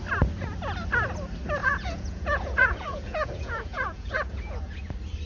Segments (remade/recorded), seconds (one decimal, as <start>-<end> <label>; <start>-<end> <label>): 0.0-1.6 recorded; 1.6-4.8 remade; 4.8-5.3 recorded